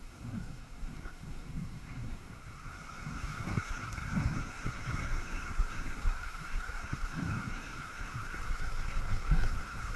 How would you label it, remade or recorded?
remade